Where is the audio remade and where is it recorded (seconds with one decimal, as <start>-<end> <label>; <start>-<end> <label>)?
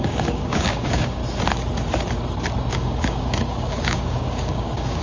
0.0-1.2 remade; 1.2-2.7 recorded; 2.7-5.0 remade